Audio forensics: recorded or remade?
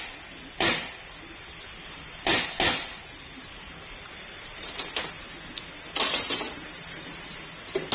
recorded